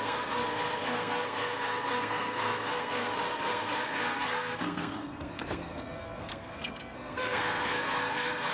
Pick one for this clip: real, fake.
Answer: fake